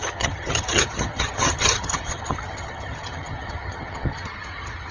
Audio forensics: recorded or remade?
remade